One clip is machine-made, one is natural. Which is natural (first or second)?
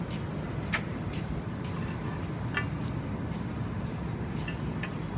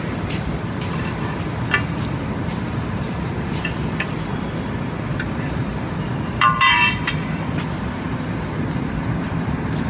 first